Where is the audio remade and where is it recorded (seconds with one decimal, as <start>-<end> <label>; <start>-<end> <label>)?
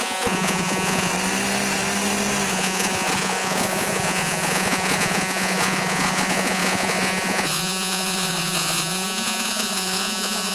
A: 0.0-1.1 remade; 1.1-2.5 recorded; 2.5-10.5 remade